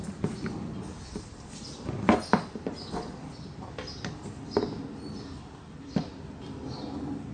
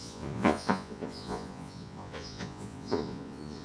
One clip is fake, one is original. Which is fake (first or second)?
second